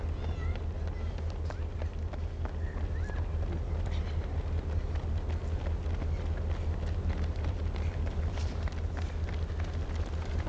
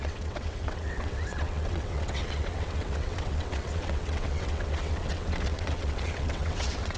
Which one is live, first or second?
first